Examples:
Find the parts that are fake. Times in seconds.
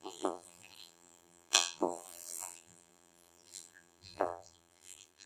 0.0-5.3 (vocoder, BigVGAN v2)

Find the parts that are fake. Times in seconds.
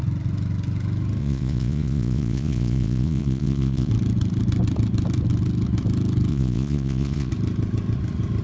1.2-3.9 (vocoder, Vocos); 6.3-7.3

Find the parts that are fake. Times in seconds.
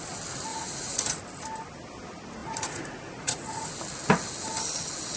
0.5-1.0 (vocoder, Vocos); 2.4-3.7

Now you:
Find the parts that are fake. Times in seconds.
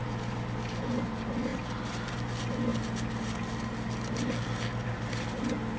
none